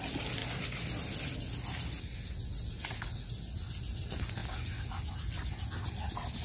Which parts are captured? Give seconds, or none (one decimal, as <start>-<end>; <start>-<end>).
0.0-6.4